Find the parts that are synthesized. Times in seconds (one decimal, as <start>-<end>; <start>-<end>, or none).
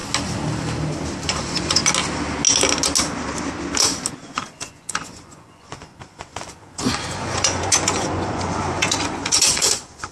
1.3-1.8; 4.1-10.1